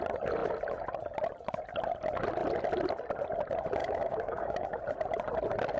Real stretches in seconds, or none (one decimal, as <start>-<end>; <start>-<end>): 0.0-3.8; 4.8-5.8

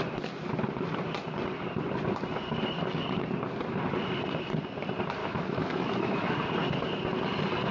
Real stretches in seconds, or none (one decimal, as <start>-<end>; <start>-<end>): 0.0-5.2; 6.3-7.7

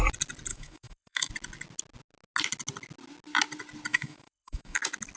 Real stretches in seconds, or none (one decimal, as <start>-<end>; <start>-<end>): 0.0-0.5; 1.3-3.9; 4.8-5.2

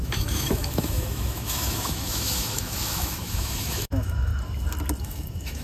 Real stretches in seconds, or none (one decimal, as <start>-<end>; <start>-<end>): 4.3-5.0